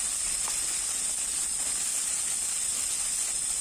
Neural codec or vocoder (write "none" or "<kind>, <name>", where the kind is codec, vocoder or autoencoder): none